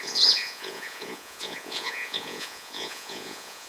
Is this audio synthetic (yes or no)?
yes